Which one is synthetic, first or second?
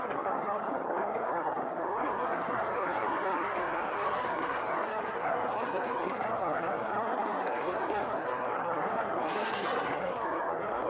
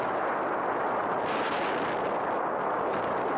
first